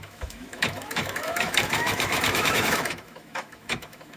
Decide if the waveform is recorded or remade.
remade